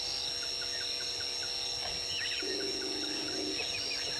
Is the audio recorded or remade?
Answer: recorded